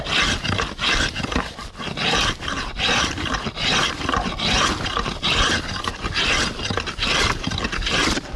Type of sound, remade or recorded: recorded